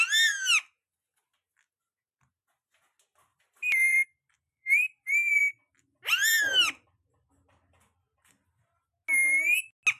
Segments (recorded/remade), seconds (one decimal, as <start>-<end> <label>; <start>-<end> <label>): 0.0-3.3 recorded; 3.3-5.4 remade; 5.4-10.0 recorded